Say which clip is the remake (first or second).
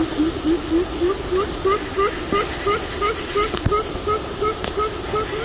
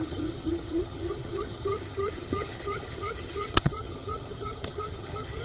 second